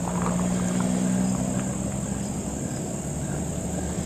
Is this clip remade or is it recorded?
recorded